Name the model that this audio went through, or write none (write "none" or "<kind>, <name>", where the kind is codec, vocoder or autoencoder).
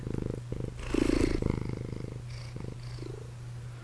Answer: none